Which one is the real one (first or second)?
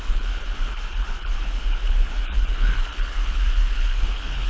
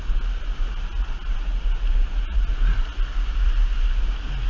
second